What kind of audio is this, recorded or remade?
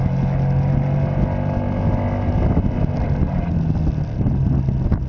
recorded